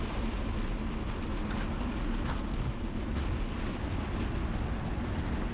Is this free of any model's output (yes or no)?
yes